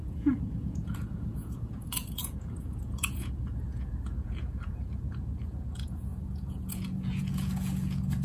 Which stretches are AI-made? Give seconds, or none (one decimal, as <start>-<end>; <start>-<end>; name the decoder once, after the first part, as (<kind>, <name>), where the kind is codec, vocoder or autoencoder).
0.0-8.2 (vocoder, Vocos)